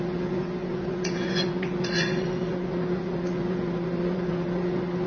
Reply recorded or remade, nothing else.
remade